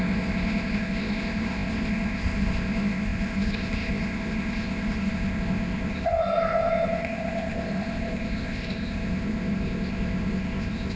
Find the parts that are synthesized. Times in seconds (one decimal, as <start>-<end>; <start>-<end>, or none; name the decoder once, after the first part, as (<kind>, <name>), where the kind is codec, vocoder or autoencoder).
0.0-11.0 (codec, ZipCodec)